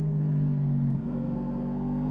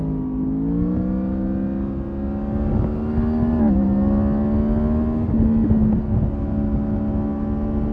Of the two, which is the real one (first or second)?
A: second